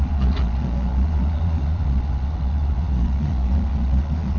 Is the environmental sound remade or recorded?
remade